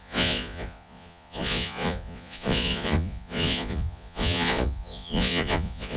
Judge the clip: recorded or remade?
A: remade